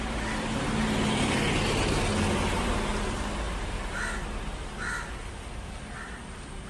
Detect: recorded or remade recorded